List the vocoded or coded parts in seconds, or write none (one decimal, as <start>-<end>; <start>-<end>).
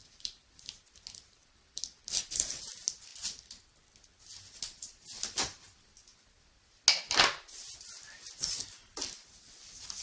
0.0-0.7; 1.4-2.5